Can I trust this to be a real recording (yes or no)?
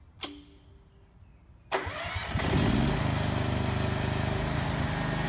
yes